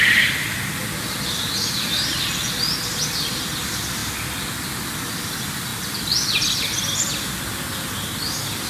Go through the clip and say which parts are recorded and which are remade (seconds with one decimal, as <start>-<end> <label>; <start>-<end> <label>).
0.0-8.7 recorded